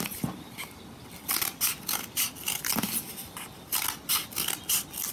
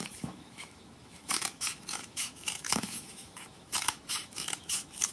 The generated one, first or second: second